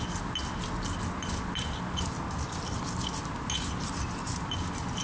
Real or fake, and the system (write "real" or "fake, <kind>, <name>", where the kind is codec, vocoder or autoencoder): real